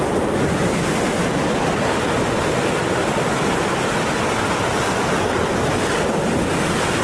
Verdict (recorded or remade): recorded